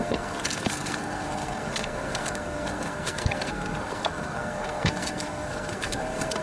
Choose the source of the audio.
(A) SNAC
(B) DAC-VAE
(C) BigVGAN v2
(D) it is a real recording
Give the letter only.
A